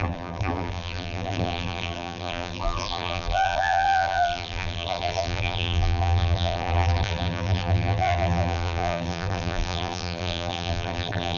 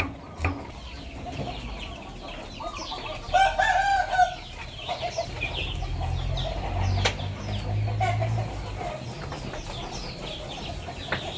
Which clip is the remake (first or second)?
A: first